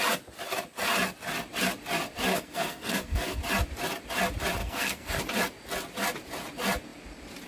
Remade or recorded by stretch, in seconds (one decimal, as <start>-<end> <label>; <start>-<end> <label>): 0.0-2.3 recorded; 2.3-3.4 remade; 3.4-4.6 recorded; 4.6-5.2 remade; 5.2-7.5 recorded

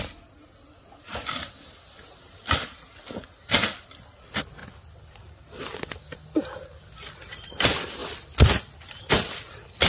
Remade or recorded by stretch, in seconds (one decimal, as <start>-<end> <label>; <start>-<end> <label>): 0.0-9.9 recorded